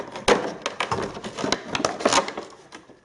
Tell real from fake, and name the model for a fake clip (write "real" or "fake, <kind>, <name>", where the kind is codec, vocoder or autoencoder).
real